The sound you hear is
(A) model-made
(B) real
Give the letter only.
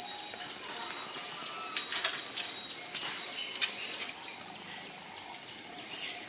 B